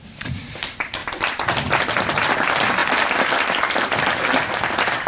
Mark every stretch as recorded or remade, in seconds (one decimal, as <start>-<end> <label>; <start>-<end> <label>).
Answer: 0.0-2.8 remade; 2.8-4.5 recorded; 4.5-5.1 remade